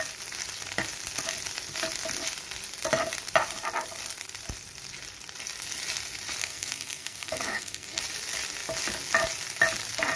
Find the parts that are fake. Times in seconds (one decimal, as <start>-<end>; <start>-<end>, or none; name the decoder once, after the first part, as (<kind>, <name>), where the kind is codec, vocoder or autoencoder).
6.4-8.0 (codec, SNAC)